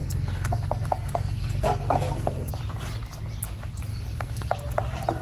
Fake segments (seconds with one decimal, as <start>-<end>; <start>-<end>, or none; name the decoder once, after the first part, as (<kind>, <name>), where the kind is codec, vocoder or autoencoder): 0.0-2.5 (codec, SNAC); 3.9-4.5